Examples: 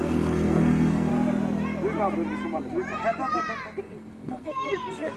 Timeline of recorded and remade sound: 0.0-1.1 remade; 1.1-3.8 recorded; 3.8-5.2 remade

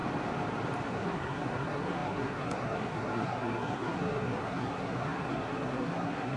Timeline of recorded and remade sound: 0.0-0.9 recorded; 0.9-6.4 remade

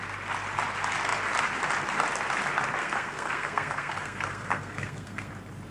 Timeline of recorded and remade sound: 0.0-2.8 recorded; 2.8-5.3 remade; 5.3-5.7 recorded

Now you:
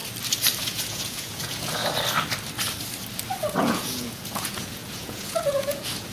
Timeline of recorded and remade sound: 0.0-0.6 recorded; 0.6-1.8 remade; 1.8-3.6 recorded; 3.6-6.1 remade

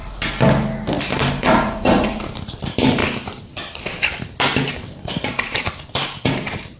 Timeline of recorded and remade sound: 0.0-1.0 recorded; 1.0-3.0 remade; 3.0-4.7 recorded; 4.7-6.8 remade

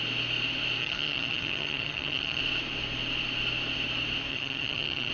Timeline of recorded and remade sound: 0.0-0.8 recorded; 0.8-2.4 remade; 2.4-4.3 recorded; 4.3-5.1 remade

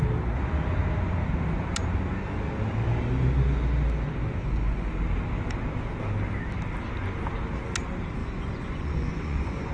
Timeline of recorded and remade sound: 0.0-4.4 recorded; 4.4-4.9 remade; 4.9-8.2 recorded; 8.2-9.7 remade

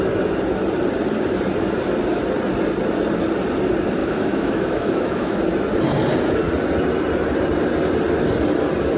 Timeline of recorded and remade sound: 0.0-4.0 recorded; 4.0-5.4 remade; 5.4-9.0 recorded